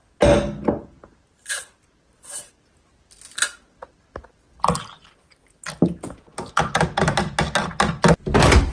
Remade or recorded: recorded